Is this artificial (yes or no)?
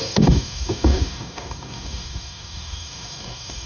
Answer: yes